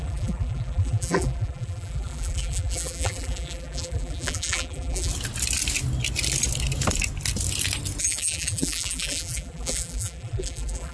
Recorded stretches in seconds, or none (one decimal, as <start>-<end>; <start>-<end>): 5.1-8.0